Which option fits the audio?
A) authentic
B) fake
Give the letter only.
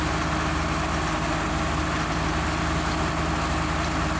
A